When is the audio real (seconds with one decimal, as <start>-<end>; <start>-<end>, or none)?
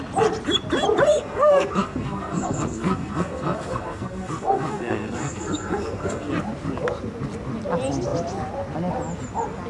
0.0-1.1; 6.3-9.7